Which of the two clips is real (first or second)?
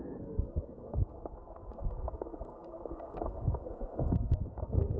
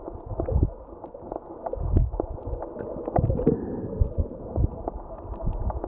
second